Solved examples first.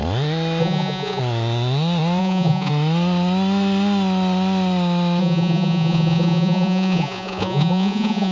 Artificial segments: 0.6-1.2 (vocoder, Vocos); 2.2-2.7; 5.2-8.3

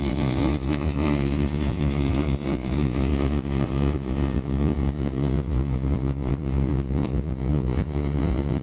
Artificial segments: 0.0-8.6 (vocoder, Vocos)

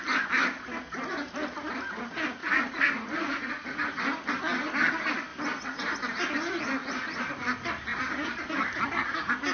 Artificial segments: 2.4-4.0 (vocoder, Vocos); 6.8-7.3

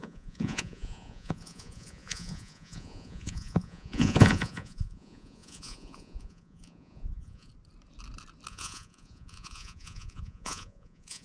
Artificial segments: 0.0-7.5 (vocoder, Vocos); 8.5-11.2

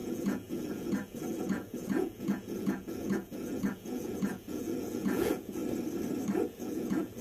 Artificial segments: 0.0-5.6 (vocoder, Vocos); 6.4-7.2

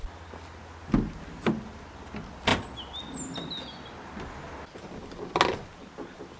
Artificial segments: none

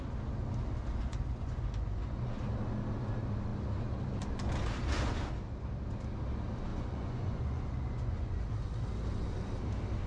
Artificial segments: 1.1-2.2 (vocoder, Vocos); 6.7-8.4